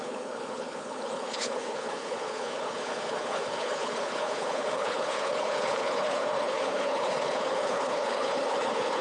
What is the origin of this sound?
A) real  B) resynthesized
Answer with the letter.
B